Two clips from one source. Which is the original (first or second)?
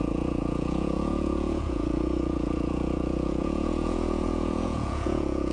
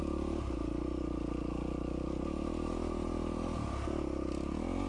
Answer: second